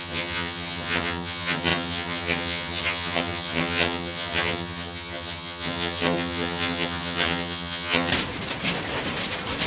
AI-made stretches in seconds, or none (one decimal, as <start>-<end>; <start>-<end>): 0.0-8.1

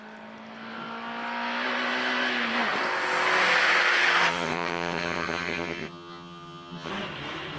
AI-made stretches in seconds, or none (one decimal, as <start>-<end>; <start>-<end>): 4.3-6.9

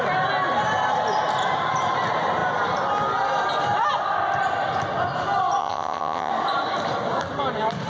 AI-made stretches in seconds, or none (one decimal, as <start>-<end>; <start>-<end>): 5.6-6.3

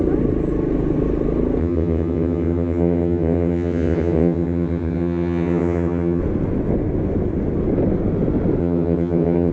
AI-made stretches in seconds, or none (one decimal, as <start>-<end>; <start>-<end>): 1.6-6.2; 8.6-9.5